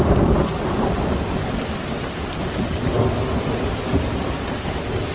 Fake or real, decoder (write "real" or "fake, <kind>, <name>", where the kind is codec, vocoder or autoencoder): real